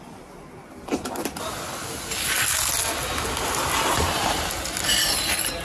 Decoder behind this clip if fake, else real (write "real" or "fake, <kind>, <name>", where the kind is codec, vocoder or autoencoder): real